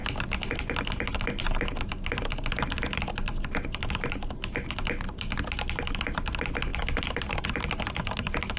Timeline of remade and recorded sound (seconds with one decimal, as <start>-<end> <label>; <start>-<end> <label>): 0.0-8.6 recorded